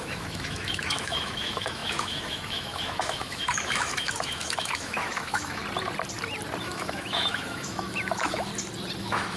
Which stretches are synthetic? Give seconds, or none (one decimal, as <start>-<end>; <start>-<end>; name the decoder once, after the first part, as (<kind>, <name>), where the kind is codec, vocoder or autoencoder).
0.0-5.6 (autoencoder, DAC-VAE); 6.6-8.5; 9.0-9.4